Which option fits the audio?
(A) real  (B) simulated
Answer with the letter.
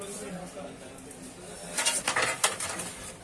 A